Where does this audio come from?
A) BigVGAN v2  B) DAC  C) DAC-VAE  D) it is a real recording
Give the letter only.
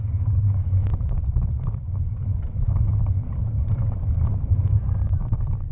A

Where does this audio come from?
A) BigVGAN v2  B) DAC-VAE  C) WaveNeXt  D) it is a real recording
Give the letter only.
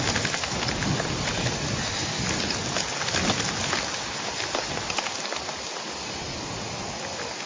D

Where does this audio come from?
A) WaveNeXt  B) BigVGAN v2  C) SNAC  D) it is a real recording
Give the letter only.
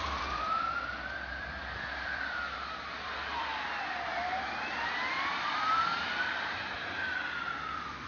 B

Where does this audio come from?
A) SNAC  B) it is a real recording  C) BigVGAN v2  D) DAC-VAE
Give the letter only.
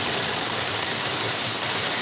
C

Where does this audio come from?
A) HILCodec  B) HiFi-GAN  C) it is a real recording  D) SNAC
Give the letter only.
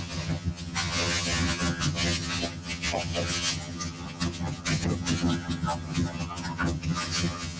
B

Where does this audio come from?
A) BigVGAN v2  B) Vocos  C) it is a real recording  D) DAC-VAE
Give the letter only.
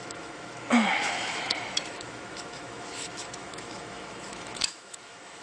D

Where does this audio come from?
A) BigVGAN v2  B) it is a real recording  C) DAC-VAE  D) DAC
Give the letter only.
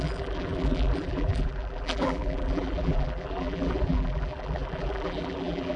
A